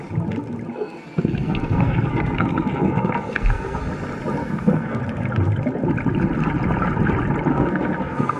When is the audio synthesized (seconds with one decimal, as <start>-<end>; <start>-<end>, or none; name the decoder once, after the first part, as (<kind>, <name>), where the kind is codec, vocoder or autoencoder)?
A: 0.7-3.8 (codec, SNAC); 4.4-5.0; 7.5-8.4